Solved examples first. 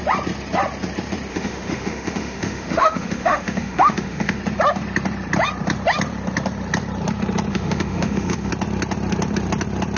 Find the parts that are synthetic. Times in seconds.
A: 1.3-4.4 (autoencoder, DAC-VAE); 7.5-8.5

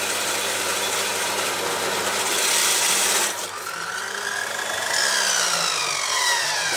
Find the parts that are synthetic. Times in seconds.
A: 2.6-5.8 (vocoder, BigVGAN v2)